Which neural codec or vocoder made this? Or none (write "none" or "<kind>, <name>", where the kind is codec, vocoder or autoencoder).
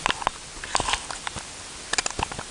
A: none